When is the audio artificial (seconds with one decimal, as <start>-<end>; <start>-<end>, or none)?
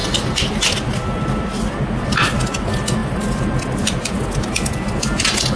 none